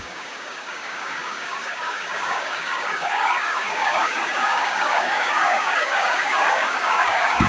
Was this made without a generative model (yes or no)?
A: no